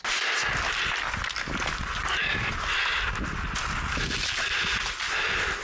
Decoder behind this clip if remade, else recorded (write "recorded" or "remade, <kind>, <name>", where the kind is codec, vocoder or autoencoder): recorded